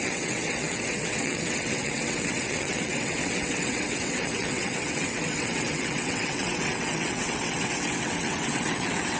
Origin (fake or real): fake